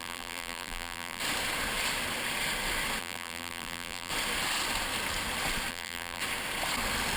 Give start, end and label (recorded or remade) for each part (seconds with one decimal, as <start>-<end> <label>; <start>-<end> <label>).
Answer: 0.0-1.2 remade; 1.2-3.0 recorded; 3.0-4.1 remade; 4.1-5.7 recorded; 5.7-6.2 remade; 6.2-7.2 recorded